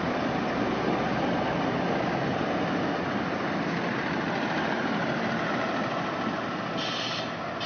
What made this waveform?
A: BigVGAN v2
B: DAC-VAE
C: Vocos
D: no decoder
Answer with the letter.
D